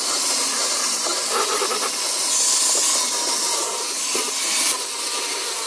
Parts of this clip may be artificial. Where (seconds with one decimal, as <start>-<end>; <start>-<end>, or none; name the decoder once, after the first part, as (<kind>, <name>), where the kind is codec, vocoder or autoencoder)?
none